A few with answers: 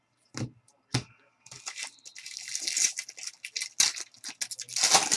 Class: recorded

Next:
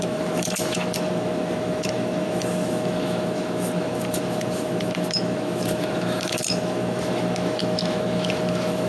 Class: remade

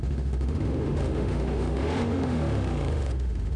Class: remade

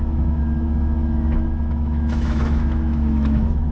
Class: remade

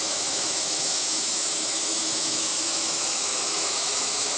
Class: remade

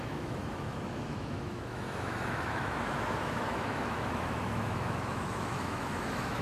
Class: remade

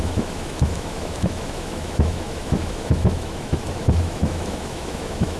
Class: remade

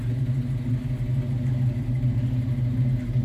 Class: recorded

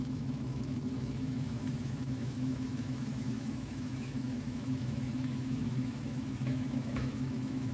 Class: remade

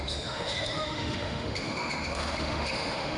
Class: remade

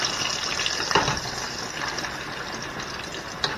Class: recorded